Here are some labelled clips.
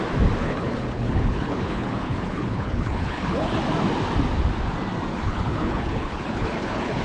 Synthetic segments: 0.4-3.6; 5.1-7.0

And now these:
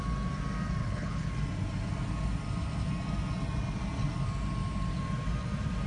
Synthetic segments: 0.8-1.3